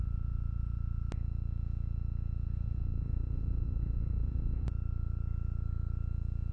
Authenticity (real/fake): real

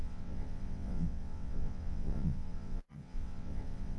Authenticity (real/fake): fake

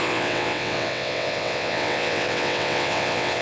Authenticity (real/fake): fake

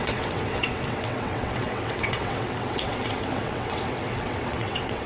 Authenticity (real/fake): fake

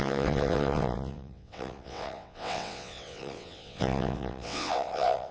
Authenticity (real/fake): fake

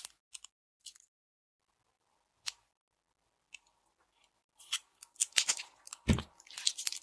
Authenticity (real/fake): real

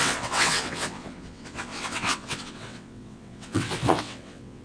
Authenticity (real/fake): fake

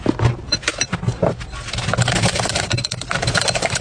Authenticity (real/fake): real